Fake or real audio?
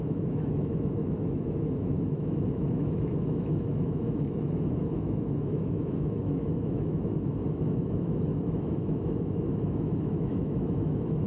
fake